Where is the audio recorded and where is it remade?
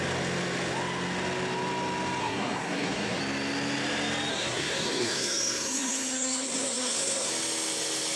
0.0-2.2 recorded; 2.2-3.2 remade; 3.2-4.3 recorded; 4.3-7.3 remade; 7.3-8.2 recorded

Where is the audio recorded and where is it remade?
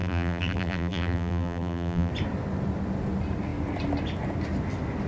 0.0-2.1 remade; 2.1-5.1 recorded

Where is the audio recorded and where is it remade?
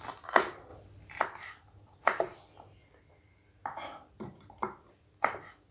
0.0-3.6 recorded; 3.6-4.9 remade; 4.9-5.7 recorded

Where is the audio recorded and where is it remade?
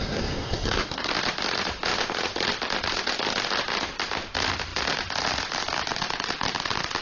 0.0-1.1 remade; 1.1-7.0 recorded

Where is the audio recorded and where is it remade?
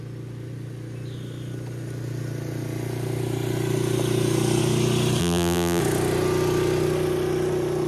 0.0-5.2 recorded; 5.2-5.8 remade; 5.8-7.9 recorded